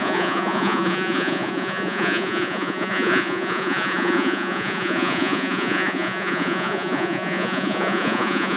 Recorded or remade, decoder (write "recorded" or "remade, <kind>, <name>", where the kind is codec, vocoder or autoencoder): remade, vocoder, Vocos